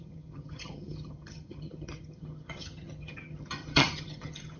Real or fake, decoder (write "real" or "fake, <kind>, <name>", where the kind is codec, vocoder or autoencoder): fake, vocoder, HiFi-GAN